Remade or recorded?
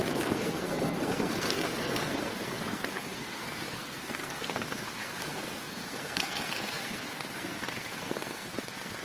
remade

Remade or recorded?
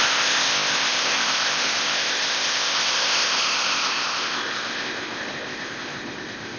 remade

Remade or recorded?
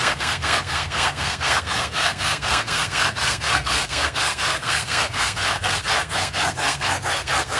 remade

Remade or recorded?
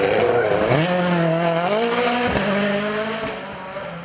recorded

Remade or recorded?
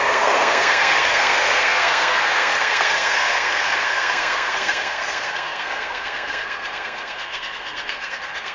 remade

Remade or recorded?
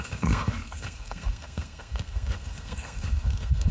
remade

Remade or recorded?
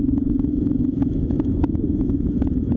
remade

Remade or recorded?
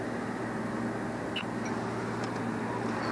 recorded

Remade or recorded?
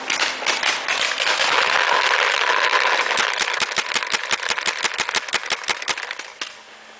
recorded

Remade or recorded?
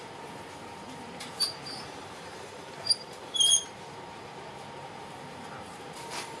remade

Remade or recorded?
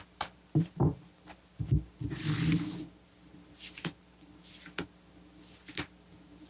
recorded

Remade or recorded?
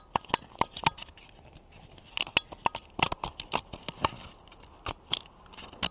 recorded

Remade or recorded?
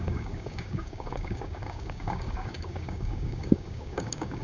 remade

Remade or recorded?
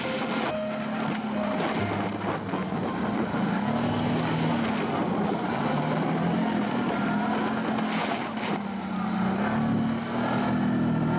recorded